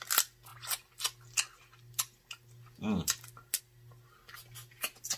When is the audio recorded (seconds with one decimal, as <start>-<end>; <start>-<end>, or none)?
0.0-5.2